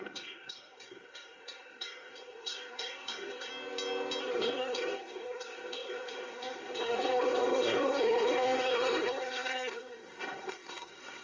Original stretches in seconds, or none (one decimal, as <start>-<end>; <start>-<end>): 3.5-4.2